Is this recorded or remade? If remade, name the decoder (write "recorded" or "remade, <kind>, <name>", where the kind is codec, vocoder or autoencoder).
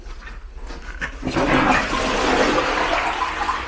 recorded